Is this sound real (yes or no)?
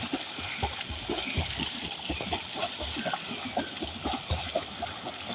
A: yes